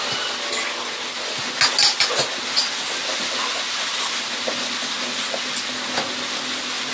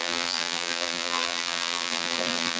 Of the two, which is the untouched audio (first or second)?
first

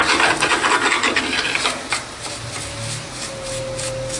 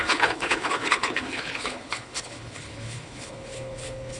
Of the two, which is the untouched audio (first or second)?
first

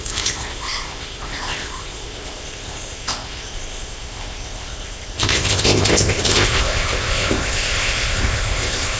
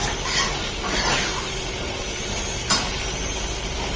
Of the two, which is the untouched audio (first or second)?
second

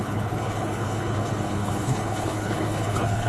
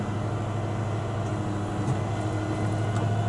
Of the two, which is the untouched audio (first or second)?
second